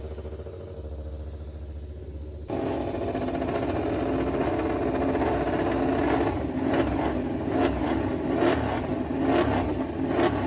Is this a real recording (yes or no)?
yes